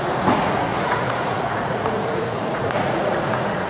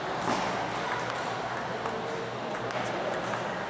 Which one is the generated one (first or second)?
first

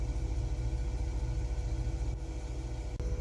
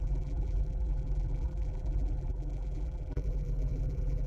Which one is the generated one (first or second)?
second